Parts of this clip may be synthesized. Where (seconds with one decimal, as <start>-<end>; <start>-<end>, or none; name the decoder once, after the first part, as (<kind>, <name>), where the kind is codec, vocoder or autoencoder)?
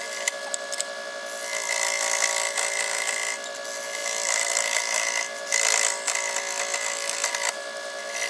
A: 4.0-4.5 (vocoder, BigVGAN v2)